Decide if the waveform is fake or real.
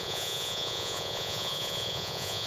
fake